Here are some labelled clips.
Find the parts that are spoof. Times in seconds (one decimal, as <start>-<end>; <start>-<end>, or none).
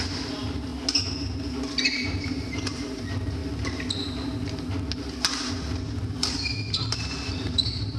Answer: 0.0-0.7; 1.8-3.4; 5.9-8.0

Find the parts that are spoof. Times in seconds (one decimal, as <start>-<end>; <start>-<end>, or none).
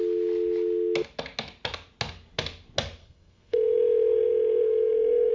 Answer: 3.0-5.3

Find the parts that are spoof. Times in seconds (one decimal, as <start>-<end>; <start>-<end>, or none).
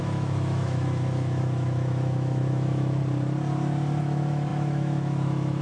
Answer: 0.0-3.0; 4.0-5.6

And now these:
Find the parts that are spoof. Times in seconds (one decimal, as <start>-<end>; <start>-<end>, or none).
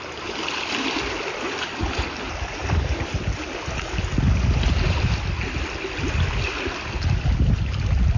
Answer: none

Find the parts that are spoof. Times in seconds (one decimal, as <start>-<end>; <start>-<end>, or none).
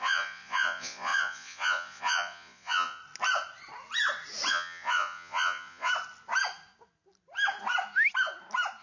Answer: 0.0-3.0; 4.5-5.9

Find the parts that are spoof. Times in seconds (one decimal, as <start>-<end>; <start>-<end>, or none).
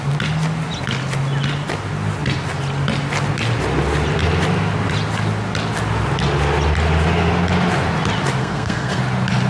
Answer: 8.4-9.0